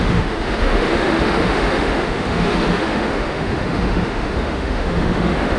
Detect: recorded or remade remade